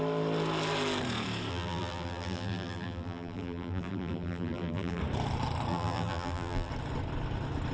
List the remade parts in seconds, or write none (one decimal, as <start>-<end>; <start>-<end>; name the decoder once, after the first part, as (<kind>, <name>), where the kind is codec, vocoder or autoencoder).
1.5-5.0 (vocoder, BigVGAN v2); 5.7-6.7